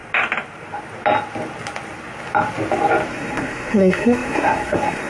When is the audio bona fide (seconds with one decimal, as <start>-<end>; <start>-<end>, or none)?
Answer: 0.0-3.1